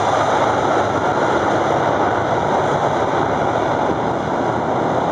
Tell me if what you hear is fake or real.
real